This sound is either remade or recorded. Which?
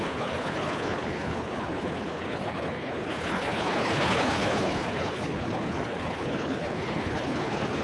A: remade